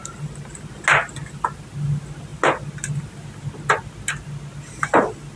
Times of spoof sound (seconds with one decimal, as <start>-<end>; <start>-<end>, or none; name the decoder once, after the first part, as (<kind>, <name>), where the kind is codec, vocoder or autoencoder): none